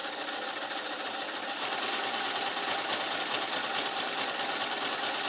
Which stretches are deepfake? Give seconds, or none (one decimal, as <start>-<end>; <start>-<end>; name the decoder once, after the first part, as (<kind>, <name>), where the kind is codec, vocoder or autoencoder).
none